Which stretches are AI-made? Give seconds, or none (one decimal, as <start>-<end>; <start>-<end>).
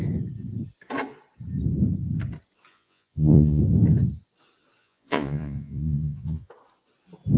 2.7-3.6; 4.8-6.5